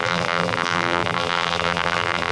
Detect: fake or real fake